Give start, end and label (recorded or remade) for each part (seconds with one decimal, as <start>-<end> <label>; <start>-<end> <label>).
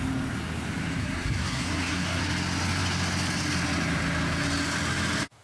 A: 0.0-1.0 recorded; 1.0-2.2 remade; 2.2-5.4 recorded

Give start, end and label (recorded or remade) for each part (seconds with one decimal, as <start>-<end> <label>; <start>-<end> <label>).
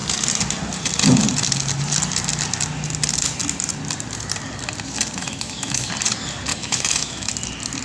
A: 0.0-5.2 recorded; 5.2-5.9 remade; 5.9-6.5 recorded; 6.5-7.3 remade; 7.3-7.8 recorded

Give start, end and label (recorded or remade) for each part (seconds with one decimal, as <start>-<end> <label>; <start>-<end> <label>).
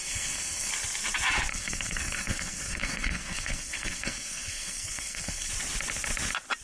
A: 0.0-0.7 remade; 0.7-1.5 recorded; 1.5-5.5 remade; 5.5-6.6 recorded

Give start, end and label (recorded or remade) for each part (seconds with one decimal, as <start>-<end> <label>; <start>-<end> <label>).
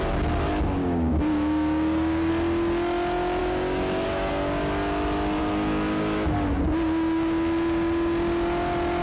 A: 0.0-0.8 recorded; 0.8-2.3 remade; 2.3-3.4 recorded; 3.4-4.3 remade; 4.3-5.4 recorded; 5.4-6.6 remade; 6.6-9.0 recorded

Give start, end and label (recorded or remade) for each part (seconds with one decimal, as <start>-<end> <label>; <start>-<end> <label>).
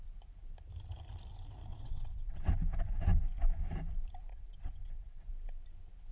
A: 0.0-1.7 recorded; 1.7-2.5 remade; 2.5-4.3 recorded; 4.3-5.2 remade; 5.2-6.1 recorded